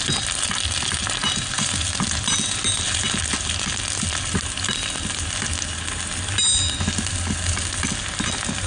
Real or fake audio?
real